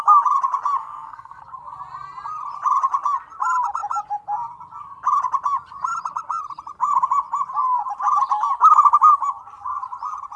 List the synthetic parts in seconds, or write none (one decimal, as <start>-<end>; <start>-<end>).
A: 0.8-1.4